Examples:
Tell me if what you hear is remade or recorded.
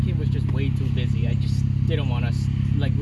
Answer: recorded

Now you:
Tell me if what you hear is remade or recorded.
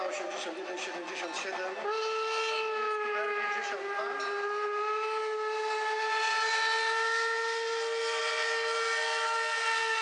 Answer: recorded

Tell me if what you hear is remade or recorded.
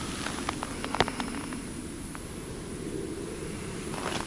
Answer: recorded